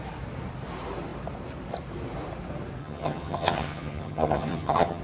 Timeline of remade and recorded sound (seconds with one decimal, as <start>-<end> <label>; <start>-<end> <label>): 0.0-2.8 recorded; 2.8-5.0 remade